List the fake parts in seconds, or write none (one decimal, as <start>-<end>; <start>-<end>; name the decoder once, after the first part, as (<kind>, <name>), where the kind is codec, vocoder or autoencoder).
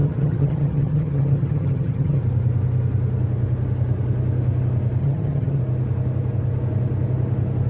0.0-2.2 (vocoder, HiFi-GAN); 5.0-5.6